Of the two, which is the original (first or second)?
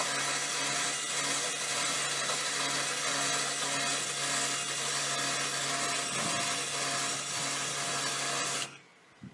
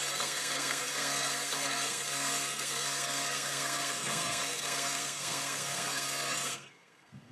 first